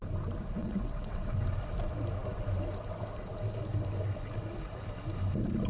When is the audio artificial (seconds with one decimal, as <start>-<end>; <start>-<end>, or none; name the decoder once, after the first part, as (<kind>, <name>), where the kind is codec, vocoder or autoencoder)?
0.6-1.3 (vocoder, WaveNeXt)